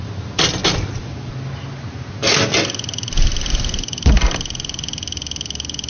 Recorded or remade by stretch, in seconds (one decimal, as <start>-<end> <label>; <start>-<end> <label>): 0.0-5.9 recorded